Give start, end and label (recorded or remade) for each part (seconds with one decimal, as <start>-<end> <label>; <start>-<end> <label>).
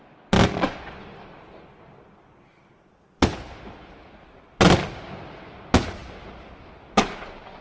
0.0-2.6 recorded; 2.6-4.4 remade; 4.4-6.0 recorded; 6.0-7.6 remade